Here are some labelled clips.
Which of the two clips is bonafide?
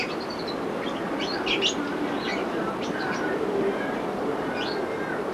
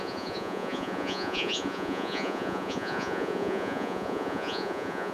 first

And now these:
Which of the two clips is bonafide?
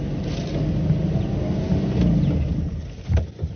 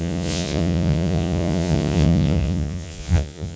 first